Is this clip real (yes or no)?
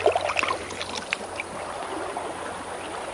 yes